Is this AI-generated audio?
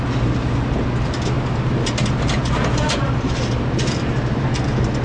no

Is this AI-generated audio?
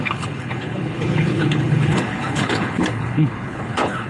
yes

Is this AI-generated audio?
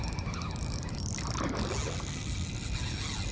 no